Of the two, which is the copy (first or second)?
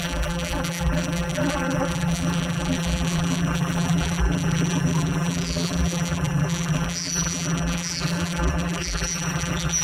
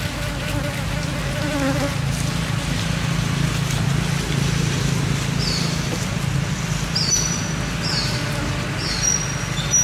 first